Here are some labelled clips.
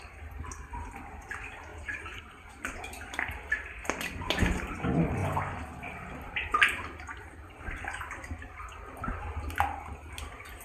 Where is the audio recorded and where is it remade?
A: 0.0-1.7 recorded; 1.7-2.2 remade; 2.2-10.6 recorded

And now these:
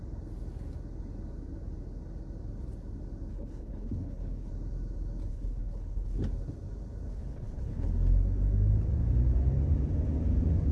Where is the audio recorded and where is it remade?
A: 0.0-3.3 recorded; 3.3-4.5 remade; 4.5-5.3 recorded; 5.3-6.2 remade; 6.2-7.1 recorded; 7.1-7.9 remade; 7.9-10.7 recorded

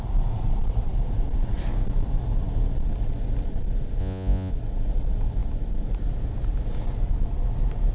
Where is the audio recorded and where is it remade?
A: 0.0-4.0 recorded; 4.0-4.5 remade; 4.5-7.9 recorded

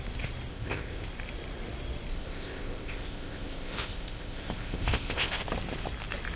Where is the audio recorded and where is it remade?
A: 0.0-0.5 recorded; 0.5-1.1 remade; 1.1-2.1 recorded; 2.1-5.4 remade; 5.4-6.4 recorded